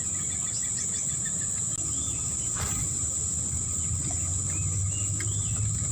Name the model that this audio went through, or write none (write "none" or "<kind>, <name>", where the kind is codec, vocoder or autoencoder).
none